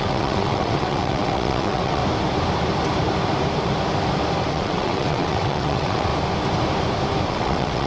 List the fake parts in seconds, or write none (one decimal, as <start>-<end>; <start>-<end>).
0.0-2.0; 4.5-6.1; 7.3-7.9

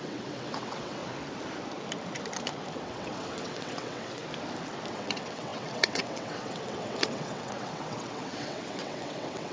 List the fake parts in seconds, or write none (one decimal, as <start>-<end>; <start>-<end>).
0.0-1.0; 2.8-4.2; 4.9-9.5

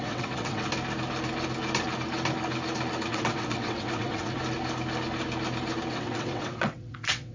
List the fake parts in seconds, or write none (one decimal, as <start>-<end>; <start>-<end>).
0.0-0.7; 3.1-4.4; 5.9-7.3

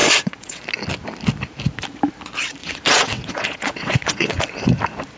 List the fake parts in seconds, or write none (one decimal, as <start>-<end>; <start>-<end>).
0.0-0.6; 2.6-4.4